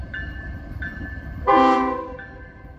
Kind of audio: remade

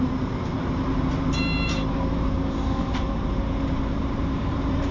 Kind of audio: remade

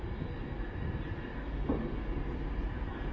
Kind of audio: recorded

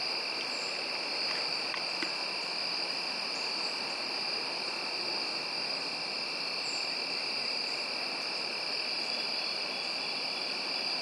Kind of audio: recorded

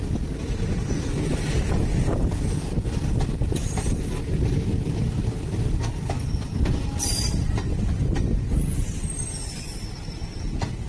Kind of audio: recorded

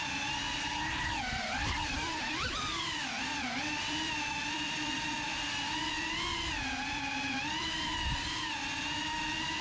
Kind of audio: remade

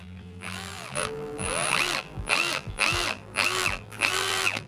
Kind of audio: remade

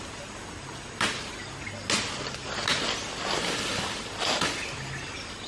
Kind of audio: recorded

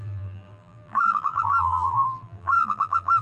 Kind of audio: remade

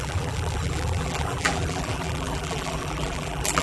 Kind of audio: remade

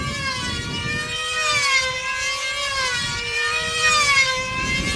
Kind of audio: remade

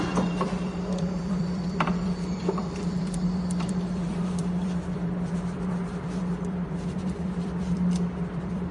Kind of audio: remade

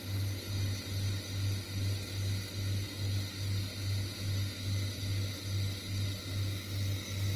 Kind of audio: recorded